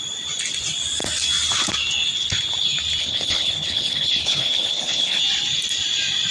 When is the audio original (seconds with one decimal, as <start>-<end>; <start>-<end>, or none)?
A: 0.0-3.0; 5.2-6.3

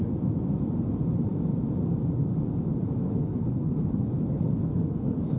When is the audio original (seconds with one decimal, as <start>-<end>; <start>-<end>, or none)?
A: 0.0-3.3